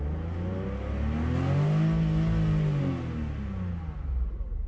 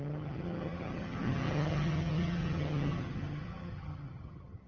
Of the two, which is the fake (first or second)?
second